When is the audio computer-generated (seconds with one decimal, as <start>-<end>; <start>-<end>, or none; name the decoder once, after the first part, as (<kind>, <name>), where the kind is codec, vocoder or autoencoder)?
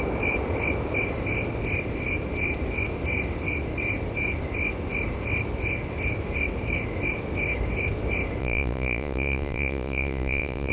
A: 8.4-10.7 (vocoder, Vocos)